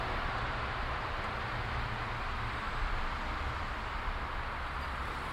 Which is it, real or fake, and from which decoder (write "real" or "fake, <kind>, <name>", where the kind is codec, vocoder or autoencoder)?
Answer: real